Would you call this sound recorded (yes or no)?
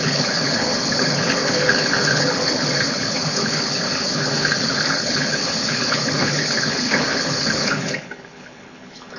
no